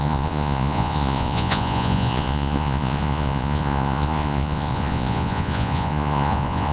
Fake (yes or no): yes